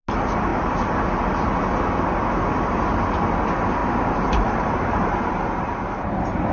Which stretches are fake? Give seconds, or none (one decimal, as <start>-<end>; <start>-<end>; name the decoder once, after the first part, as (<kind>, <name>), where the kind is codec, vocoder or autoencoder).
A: 3.8-6.5 (vocoder, BigVGAN v2)